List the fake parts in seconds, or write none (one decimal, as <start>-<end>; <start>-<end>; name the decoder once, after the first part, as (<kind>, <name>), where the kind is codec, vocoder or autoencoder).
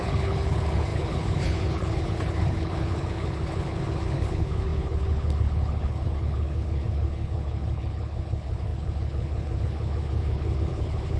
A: 0.0-11.2 (codec, HILCodec)